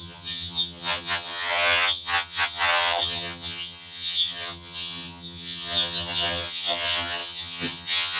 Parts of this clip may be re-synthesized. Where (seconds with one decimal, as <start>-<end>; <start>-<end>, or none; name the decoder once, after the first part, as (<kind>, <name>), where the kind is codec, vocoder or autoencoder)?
0.0-8.2 (vocoder, HiFi-GAN)

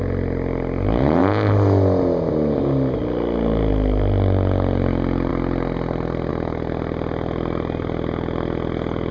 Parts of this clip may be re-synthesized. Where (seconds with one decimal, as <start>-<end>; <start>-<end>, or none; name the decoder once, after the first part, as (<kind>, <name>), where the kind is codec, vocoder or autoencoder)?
none

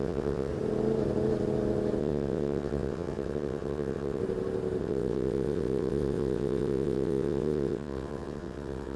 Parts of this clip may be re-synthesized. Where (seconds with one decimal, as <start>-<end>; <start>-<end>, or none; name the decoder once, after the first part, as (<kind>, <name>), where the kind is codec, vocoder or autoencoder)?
0.0-0.5 (vocoder, WaveNeXt); 2.0-4.2; 4.8-9.0

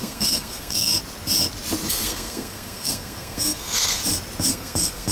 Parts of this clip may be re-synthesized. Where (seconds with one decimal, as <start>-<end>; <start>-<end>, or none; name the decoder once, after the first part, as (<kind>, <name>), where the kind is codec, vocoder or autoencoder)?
0.0-0.9 (codec, SNAC); 1.9-4.0; 4.5-5.1